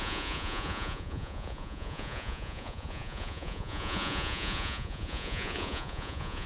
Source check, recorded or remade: remade